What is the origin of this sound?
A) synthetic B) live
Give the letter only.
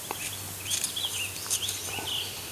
B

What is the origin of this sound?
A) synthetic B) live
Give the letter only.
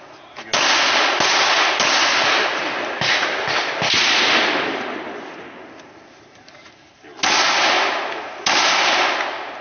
B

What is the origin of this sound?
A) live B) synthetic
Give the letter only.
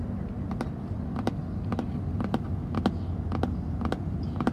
A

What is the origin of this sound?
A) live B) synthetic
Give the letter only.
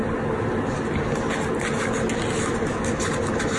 A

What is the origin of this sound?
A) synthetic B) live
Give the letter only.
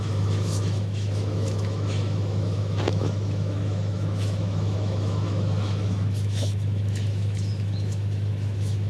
A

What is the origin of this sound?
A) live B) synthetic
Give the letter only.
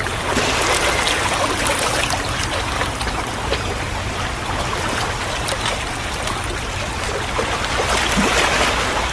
A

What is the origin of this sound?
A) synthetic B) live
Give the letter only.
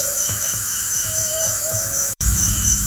A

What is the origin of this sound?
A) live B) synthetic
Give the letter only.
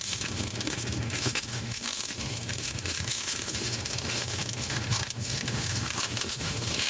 B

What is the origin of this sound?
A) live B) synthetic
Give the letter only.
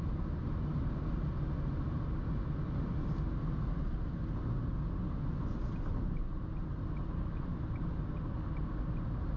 A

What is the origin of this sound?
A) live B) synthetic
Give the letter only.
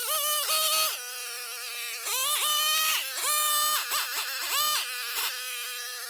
A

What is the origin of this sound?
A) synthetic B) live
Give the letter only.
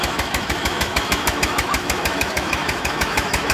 A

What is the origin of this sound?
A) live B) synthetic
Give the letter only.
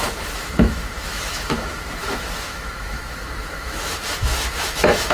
B